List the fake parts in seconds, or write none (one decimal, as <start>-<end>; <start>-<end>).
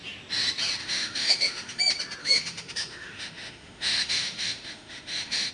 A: 0.8-1.8; 2.2-5.5